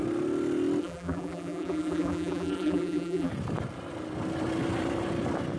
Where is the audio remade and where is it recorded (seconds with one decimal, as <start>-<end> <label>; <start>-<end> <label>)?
0.0-0.8 recorded; 0.8-3.3 remade; 3.3-5.6 recorded